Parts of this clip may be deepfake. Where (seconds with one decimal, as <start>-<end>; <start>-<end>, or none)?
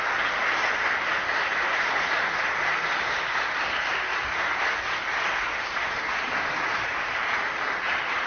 none